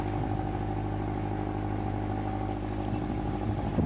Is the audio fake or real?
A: real